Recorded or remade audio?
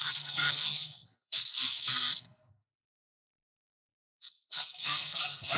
remade